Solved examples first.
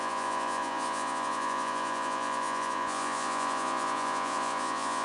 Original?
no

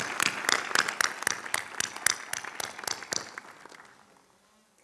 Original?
yes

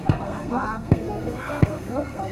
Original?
no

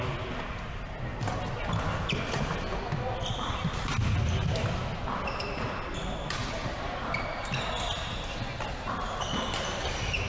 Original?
yes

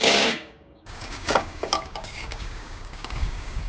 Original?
no